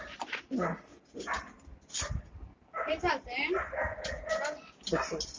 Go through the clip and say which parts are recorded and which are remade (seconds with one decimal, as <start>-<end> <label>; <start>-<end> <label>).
0.0-5.4 recorded